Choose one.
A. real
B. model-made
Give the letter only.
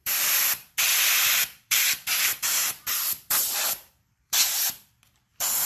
B